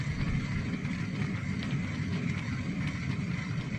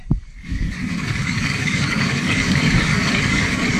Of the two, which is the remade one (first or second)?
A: second